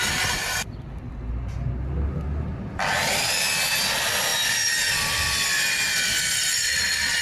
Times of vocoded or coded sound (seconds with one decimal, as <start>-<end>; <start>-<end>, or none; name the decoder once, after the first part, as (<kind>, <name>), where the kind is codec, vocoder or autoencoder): 4.3-4.9 (vocoder, BigVGAN v2)